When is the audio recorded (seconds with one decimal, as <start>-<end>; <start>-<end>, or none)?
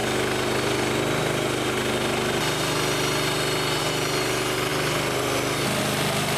0.0-6.4